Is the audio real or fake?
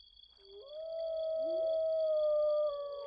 real